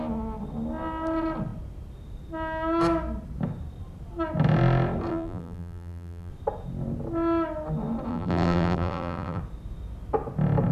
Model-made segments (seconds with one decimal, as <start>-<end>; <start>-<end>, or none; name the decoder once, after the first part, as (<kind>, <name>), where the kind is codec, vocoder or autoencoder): 5.1-6.3 (vocoder, BigVGAN v2); 8.1-9.4